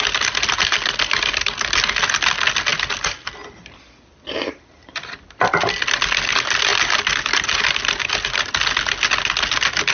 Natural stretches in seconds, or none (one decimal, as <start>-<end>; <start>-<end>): 0.0-9.9